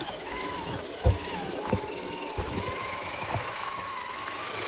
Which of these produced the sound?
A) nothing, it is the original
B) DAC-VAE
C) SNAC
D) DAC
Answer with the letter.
B